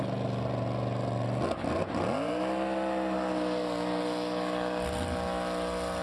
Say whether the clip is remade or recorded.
recorded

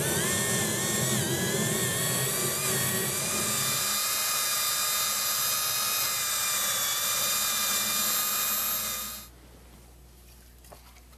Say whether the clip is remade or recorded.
recorded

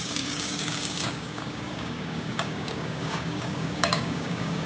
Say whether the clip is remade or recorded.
remade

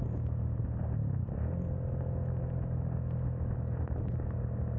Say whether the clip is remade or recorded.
recorded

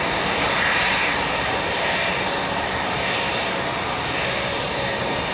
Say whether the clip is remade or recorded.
recorded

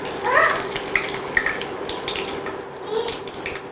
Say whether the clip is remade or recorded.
recorded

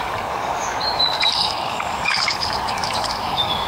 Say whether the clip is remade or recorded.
remade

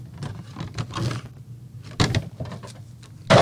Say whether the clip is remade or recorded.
recorded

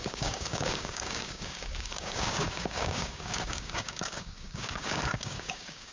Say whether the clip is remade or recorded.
remade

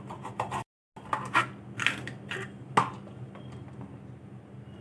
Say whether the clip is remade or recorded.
recorded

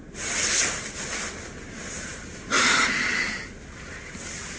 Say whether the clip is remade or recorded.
recorded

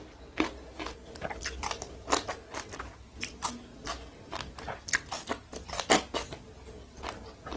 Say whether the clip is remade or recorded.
recorded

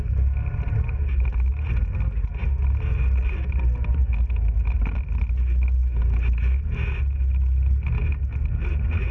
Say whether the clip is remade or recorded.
recorded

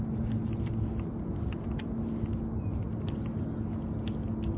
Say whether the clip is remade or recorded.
recorded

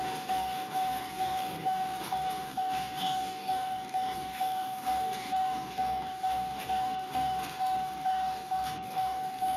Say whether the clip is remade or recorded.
remade